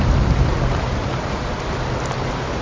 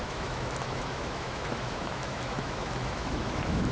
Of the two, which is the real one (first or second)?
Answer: first